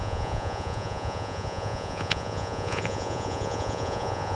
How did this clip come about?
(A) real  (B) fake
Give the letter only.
B